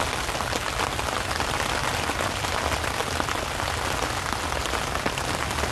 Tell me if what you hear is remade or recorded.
recorded